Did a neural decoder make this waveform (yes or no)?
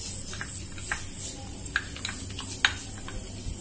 no